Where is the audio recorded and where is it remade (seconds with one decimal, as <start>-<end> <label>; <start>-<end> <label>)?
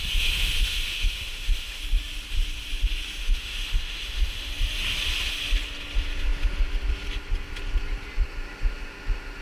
0.0-1.8 remade; 1.8-3.2 recorded; 3.2-4.5 remade; 4.5-9.4 recorded